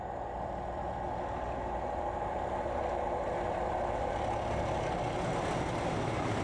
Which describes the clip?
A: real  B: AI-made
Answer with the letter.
A